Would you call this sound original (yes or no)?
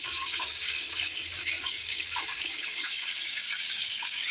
no